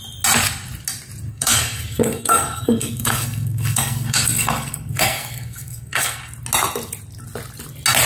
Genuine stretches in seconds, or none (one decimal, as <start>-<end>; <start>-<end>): 0.0-1.3; 6.2-8.1